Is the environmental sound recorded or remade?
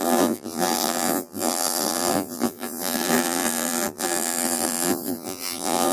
remade